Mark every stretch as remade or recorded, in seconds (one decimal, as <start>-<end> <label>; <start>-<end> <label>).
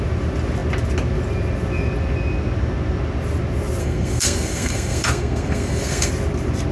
0.0-3.8 recorded; 3.8-6.1 remade; 6.1-6.7 recorded